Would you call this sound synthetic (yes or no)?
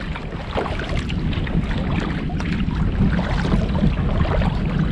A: no